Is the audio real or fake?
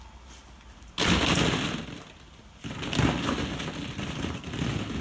real